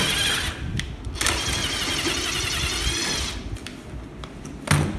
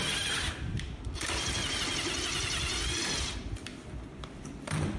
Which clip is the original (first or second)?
first